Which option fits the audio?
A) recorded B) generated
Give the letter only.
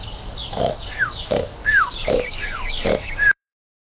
B